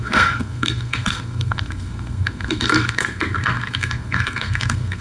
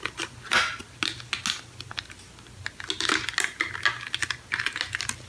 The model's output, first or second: first